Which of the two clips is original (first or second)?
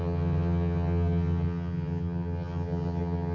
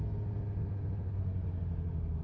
second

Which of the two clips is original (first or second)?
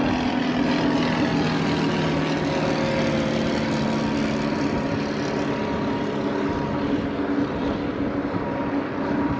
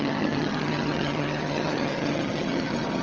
first